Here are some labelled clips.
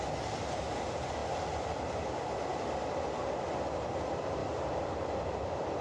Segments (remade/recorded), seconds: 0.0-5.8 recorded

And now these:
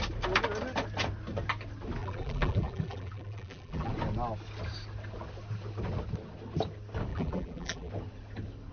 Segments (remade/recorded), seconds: 0.0-2.0 recorded; 2.0-3.9 remade; 3.9-7.1 recorded; 7.1-7.9 remade; 7.9-8.7 recorded

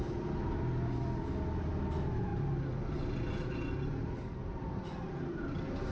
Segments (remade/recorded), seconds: 0.0-5.9 recorded

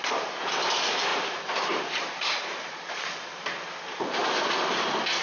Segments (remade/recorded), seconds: 0.0-4.2 remade; 4.2-5.2 recorded

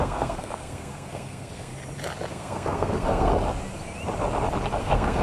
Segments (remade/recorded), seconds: 0.0-1.7 remade; 1.7-2.3 recorded; 2.3-3.3 remade; 3.3-4.8 recorded; 4.8-5.2 remade

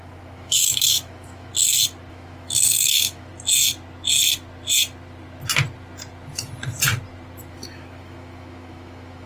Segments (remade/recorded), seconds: 0.0-1.5 remade; 1.5-2.1 recorded; 2.1-3.3 remade; 3.3-7.5 recorded; 7.5-9.3 remade